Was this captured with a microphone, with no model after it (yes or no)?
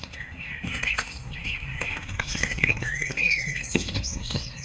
no